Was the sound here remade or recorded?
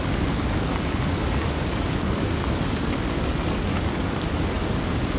remade